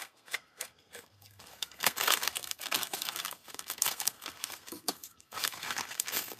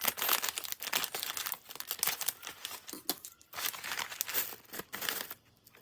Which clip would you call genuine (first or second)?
second